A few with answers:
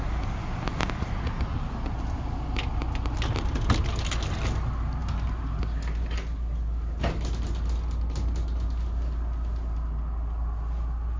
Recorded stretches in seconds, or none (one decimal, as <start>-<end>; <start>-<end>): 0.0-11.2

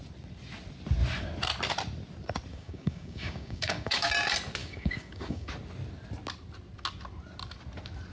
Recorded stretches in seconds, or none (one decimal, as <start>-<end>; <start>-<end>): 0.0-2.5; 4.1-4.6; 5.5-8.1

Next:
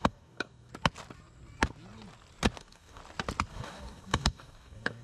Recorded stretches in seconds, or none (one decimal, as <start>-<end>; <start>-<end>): 0.7-2.6; 3.0-3.5

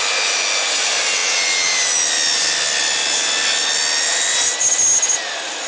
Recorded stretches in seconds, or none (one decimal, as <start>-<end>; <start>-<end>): 0.0-5.7